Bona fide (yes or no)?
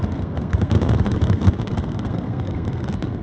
no